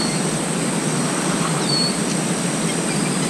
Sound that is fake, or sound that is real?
real